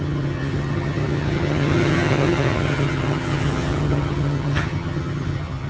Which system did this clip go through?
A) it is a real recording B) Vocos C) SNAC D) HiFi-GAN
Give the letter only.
D